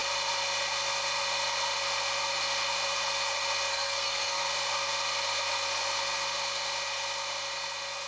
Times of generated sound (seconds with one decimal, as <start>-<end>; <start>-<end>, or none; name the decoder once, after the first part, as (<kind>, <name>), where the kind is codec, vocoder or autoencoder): 3.7-4.4 (codec, SNAC)